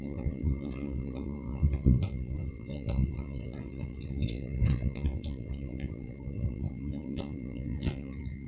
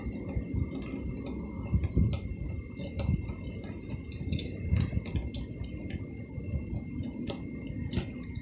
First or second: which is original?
second